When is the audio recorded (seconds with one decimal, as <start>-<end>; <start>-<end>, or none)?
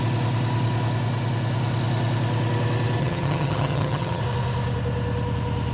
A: 0.0-3.0; 4.2-5.7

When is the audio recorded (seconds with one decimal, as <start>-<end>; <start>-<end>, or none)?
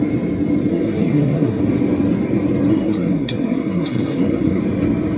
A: 0.0-0.7; 1.6-2.7; 4.6-5.2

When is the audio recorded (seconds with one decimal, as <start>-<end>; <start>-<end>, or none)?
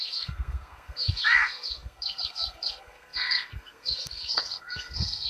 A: none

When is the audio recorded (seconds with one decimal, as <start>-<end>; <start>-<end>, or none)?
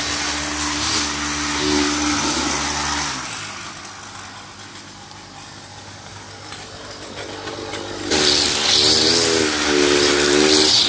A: 0.0-5.7; 6.5-10.9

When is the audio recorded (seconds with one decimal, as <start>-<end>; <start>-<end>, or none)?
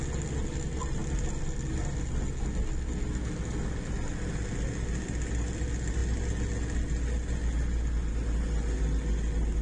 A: 0.0-9.6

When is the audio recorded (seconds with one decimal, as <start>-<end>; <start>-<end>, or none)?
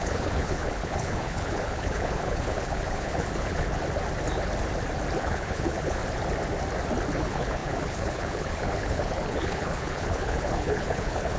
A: 3.7-5.2; 6.0-7.1